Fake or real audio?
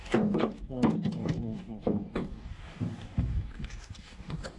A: fake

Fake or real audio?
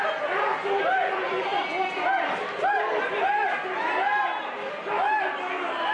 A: real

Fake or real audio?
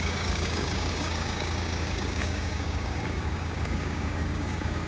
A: fake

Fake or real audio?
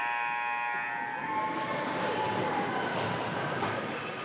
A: real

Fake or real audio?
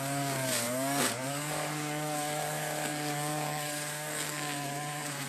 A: fake